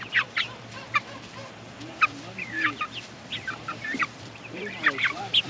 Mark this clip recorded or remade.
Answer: remade